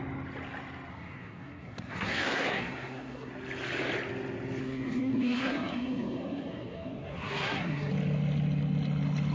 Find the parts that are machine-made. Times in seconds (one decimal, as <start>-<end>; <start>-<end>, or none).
0.9-3.3; 4.6-7.9